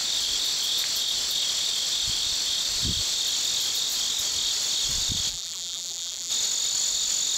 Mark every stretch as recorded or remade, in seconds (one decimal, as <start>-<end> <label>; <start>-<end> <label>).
0.0-5.3 recorded; 5.3-6.3 remade; 6.3-7.4 recorded